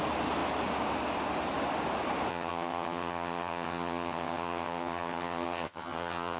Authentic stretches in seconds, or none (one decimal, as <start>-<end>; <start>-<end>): 0.0-2.3

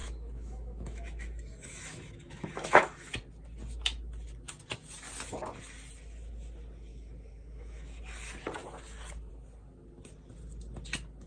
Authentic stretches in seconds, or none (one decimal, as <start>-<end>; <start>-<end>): 3.1-6.9; 8.0-11.3

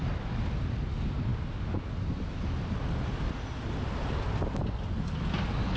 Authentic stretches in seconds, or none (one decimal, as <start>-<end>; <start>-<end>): 0.0-5.8

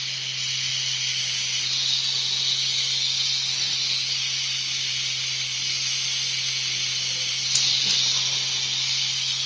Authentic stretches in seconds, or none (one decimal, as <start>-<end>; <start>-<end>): 0.0-9.5

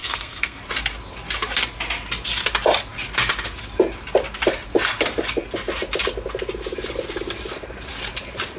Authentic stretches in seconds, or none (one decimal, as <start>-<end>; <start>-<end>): 0.6-8.6

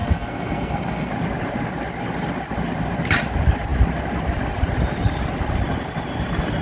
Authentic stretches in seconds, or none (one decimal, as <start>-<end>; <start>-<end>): 1.1-6.6